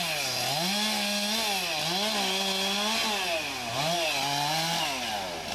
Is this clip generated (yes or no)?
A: no